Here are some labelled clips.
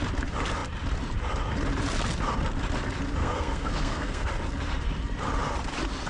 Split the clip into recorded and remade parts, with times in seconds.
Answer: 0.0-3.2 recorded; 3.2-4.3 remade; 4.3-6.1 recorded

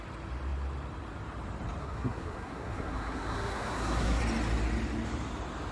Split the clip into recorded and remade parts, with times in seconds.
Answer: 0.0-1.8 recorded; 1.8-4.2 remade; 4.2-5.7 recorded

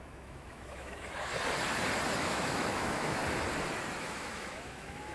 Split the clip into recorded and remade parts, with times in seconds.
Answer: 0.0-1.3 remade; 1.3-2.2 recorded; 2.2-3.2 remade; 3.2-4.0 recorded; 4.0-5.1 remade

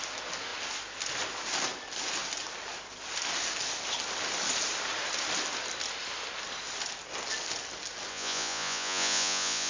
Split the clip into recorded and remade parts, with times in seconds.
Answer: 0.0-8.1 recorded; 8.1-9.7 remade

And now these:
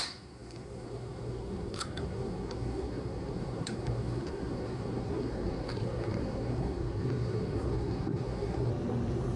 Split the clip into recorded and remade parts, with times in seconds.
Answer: 0.0-8.7 remade; 8.7-9.4 recorded

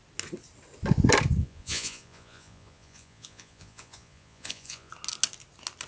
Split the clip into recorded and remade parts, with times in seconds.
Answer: 0.0-1.4 recorded; 1.4-4.9 remade; 4.9-5.9 recorded